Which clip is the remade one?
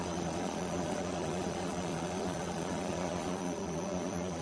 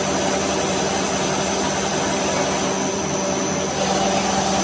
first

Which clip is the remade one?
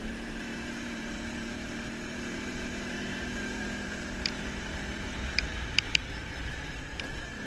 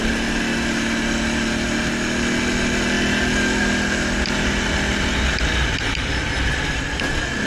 first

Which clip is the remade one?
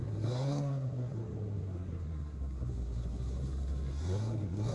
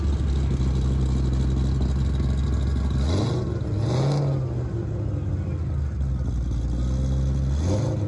first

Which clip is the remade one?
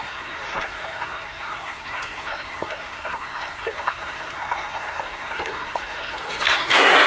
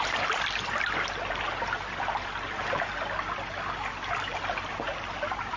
first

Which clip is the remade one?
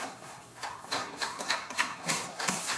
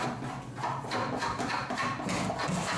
first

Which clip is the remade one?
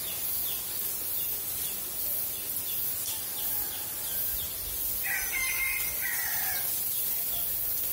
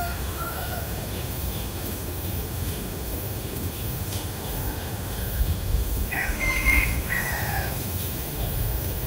second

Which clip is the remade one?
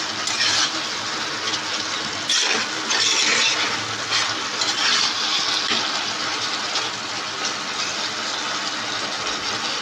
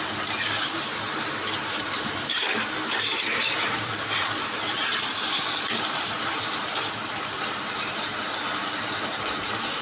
second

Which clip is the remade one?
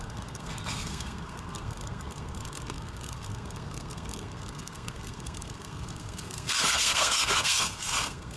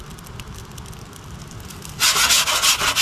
first